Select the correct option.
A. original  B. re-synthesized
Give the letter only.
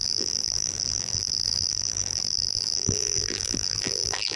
B